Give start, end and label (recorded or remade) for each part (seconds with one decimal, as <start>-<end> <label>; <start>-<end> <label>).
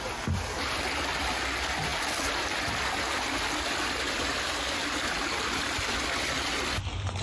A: 0.0-7.2 recorded